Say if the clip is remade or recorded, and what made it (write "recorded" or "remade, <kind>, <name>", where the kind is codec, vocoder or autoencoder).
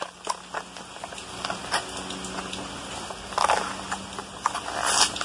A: recorded